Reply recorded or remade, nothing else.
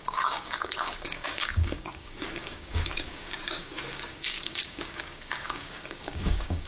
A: remade